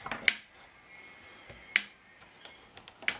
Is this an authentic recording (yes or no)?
yes